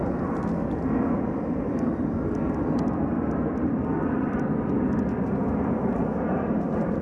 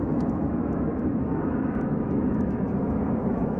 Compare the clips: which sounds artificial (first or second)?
second